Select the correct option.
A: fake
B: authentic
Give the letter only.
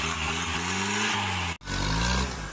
B